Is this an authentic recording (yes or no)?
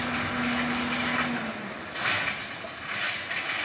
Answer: yes